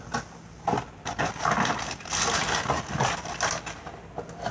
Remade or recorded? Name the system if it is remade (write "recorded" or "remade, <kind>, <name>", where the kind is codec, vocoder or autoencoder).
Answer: recorded